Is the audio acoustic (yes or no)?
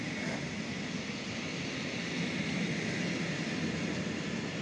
yes